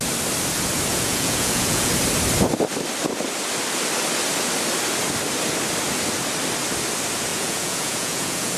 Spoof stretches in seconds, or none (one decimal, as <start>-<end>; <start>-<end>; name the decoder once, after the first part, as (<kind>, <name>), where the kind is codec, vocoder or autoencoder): 0.9-1.9 (vocoder, Vocos); 7.3-8.6